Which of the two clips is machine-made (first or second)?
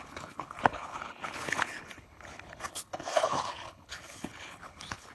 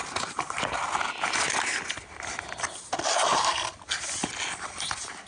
first